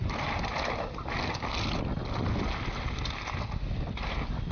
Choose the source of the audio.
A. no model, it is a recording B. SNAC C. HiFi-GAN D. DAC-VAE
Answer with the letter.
A